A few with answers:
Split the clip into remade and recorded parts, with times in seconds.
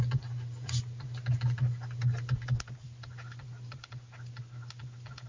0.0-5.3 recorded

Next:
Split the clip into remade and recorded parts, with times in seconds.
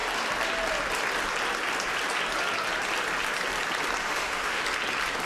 0.0-4.0 recorded; 4.0-4.6 remade; 4.6-5.3 recorded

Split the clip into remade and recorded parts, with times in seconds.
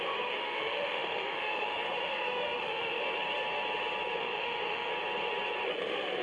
0.0-3.0 remade; 3.0-4.2 recorded; 4.2-4.9 remade; 4.9-5.8 recorded; 5.8-6.2 remade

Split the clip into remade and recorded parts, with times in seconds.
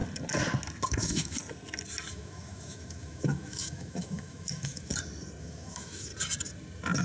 0.0-0.9 recorded; 0.9-1.4 remade; 1.4-2.1 recorded; 2.1-4.9 remade; 4.9-5.4 recorded; 5.4-6.1 remade; 6.1-7.0 recorded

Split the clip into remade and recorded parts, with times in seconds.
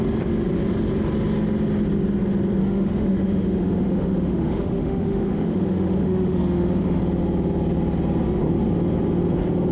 0.0-2.6 recorded; 2.6-7.0 remade; 7.0-9.7 recorded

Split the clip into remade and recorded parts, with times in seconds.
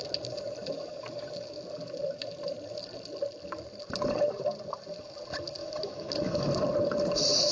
0.0-5.6 recorded; 5.6-6.5 remade; 6.5-7.5 recorded